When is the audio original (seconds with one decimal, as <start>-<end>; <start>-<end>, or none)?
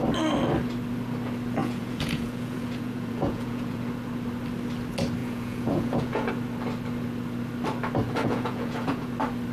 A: 0.0-1.6; 3.8-5.2; 6.3-8.2; 9.1-9.5